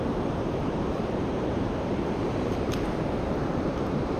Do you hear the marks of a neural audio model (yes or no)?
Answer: yes